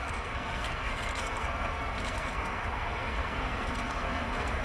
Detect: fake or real fake